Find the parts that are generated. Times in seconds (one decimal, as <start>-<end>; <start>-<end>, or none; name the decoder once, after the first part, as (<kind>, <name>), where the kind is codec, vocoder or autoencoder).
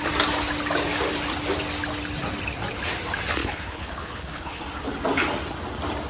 3.4-4.6 (codec, HILCodec)